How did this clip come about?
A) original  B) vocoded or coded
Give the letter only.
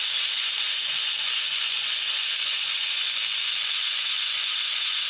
B